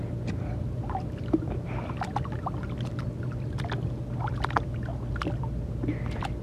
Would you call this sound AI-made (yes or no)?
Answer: no